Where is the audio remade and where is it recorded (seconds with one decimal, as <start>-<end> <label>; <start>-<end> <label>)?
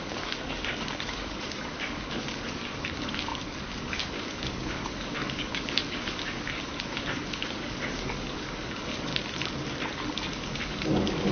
0.0-9.1 remade; 9.1-10.1 recorded; 10.1-11.3 remade